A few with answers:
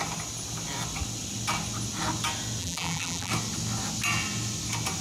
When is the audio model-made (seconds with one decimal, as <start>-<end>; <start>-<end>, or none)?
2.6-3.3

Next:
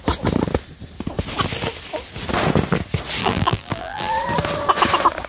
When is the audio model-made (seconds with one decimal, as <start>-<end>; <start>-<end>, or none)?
3.2-4.1

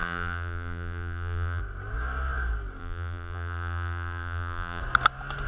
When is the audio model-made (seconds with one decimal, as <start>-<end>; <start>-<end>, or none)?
0.0-1.6; 2.8-4.8

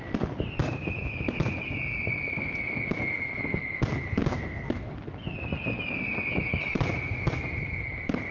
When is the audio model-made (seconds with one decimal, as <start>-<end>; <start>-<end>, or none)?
none